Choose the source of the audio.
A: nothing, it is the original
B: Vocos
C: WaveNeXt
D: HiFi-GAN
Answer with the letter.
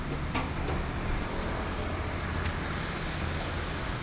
A